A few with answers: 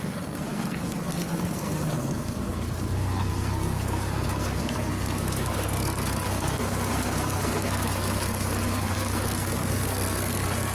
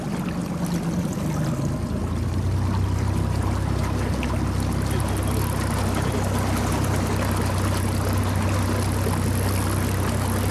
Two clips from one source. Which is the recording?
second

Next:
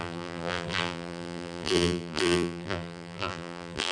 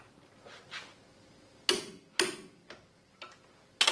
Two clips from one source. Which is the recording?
second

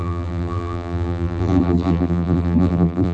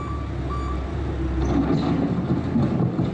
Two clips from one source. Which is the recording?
second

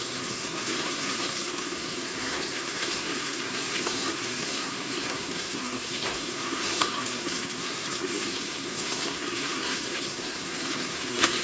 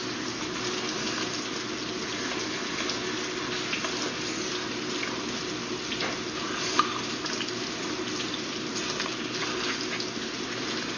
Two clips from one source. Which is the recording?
second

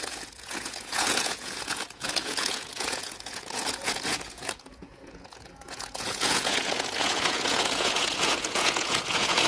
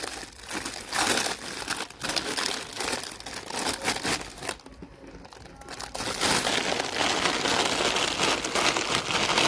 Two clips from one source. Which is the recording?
second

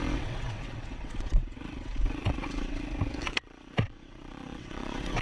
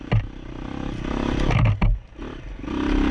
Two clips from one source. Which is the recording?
second